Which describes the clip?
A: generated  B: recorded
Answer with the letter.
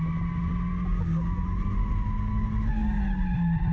B